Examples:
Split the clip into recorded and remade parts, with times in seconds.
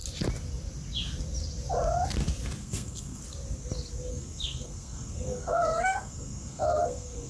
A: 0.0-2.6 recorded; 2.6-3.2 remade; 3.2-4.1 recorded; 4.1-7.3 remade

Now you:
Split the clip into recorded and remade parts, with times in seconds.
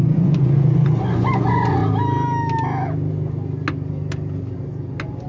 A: 0.0-1.8 remade; 1.8-5.3 recorded